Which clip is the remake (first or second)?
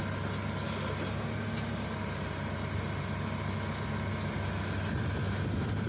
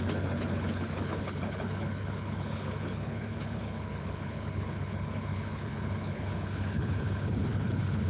second